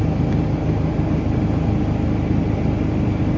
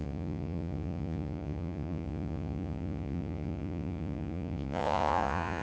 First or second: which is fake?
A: second